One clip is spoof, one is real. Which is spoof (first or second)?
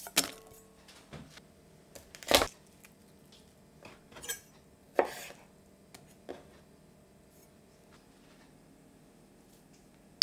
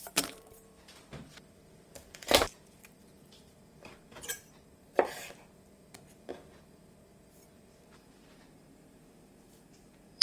second